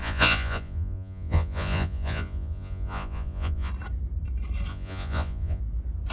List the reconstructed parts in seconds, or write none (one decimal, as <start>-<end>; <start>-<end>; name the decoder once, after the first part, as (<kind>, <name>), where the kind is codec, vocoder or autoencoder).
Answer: 0.0-3.7 (vocoder, Vocos); 4.7-5.6